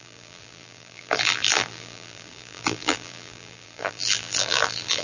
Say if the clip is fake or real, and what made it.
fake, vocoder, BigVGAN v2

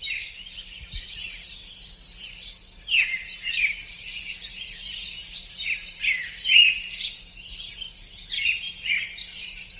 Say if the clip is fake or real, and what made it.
fake, vocoder, BigVGAN v2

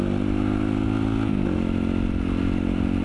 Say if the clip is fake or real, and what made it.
real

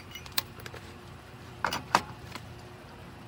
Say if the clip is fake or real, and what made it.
fake, vocoder, BigVGAN v2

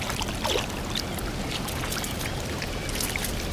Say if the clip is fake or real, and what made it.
real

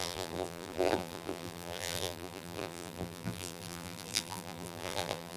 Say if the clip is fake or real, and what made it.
fake, vocoder, BigVGAN v2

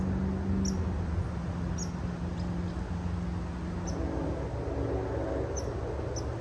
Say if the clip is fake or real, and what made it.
real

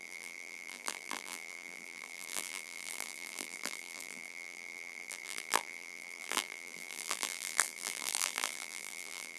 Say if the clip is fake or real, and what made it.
fake, vocoder, BigVGAN v2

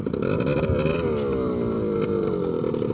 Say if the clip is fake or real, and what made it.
fake, vocoder, BigVGAN v2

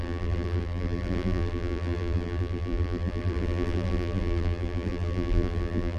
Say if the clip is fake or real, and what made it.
fake, vocoder, BigVGAN v2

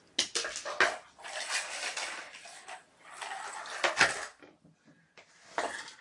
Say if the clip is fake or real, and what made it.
real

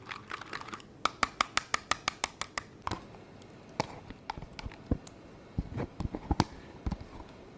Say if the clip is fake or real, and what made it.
real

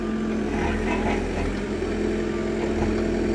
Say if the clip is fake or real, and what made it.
real